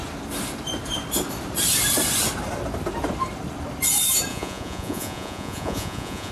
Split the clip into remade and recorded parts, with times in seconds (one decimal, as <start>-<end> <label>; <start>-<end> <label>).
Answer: 0.0-4.3 recorded; 4.3-6.3 remade